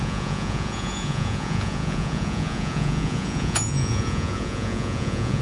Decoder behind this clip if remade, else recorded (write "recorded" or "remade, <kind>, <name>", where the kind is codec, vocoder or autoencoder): remade, vocoder, Vocos